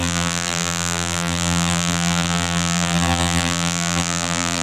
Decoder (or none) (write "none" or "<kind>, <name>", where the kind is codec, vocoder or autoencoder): vocoder, BigVGAN v2